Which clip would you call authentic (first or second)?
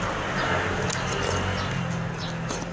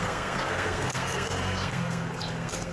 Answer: first